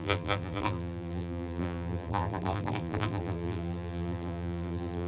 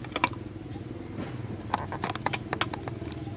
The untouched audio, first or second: second